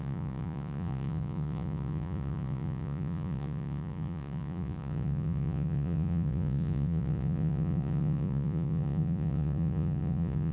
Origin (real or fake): fake